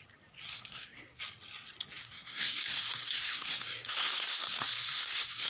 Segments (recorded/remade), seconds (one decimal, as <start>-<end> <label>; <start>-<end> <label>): 0.0-0.5 recorded; 0.5-1.2 remade; 1.2-2.0 recorded; 2.0-5.5 remade